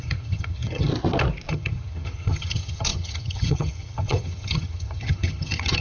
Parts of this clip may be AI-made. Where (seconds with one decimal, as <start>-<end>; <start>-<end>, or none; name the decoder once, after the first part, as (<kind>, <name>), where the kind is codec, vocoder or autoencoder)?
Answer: 0.0-0.9 (vocoder, HiFi-GAN); 1.5-5.8